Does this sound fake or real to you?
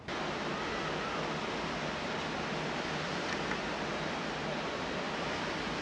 real